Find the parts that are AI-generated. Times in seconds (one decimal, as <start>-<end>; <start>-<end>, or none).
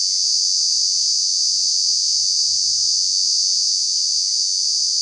0.0-5.0